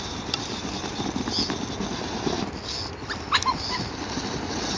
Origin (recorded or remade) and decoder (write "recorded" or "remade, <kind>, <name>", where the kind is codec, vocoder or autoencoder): recorded